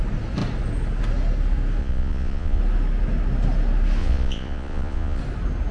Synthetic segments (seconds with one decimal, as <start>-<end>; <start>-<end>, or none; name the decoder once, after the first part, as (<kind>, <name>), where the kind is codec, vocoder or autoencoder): 1.8-2.6 (vocoder, Vocos); 4.0-5.2